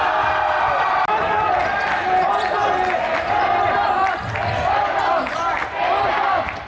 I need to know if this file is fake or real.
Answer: real